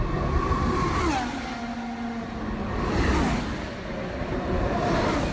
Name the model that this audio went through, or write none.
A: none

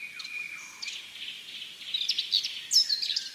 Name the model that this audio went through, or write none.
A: none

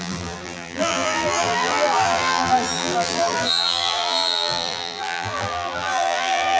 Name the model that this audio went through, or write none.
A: vocoder, BigVGAN v2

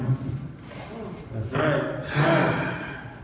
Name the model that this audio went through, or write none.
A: none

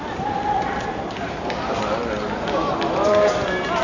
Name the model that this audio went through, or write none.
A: none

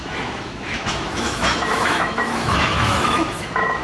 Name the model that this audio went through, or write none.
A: autoencoder, DAC-VAE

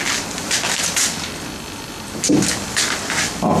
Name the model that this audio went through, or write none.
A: none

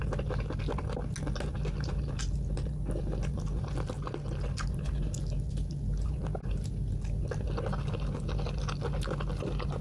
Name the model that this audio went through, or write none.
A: none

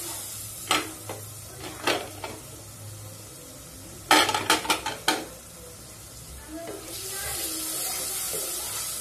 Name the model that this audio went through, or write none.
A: none